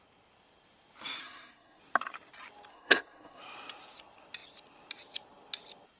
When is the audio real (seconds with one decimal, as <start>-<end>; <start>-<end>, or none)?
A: 0.0-1.2; 1.8-2.7; 3.4-6.0